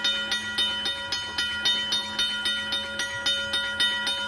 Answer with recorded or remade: recorded